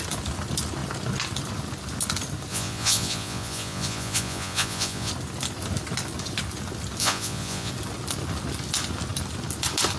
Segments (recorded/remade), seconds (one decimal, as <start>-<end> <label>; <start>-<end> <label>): 0.0-2.5 recorded; 2.5-5.1 remade; 5.1-7.0 recorded; 7.0-7.7 remade; 7.7-10.0 recorded